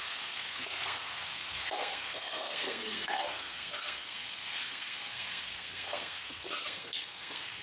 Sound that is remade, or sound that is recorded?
remade